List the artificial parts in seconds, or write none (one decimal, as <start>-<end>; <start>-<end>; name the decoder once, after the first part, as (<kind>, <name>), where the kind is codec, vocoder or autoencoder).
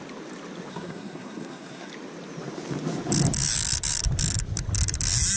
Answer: 0.7-1.9 (codec, SNAC)